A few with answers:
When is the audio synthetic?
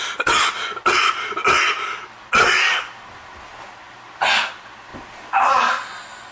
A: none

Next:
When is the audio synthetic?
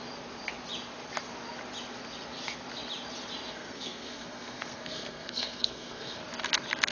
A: 3.5-6.2 (codec, SNAC)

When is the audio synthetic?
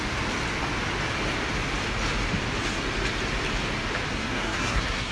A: 4.1-5.1 (codec, SNAC)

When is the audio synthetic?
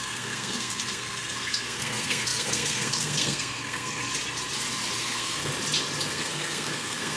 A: 0.0-4.0 (codec, SNAC); 5.0-5.5; 6.1-7.2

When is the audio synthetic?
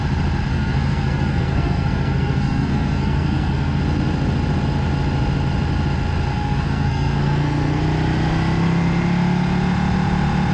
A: 0.5-3.8 (codec, SNAC); 6.3-7.8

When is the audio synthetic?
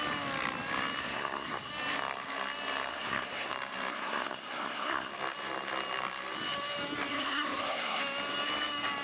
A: 1.0-1.7 (codec, SNAC); 2.9-3.5; 3.9-5.1; 7.1-8.0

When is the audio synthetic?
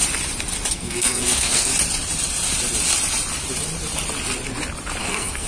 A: 0.7-1.7 (codec, SNAC); 5.0-5.5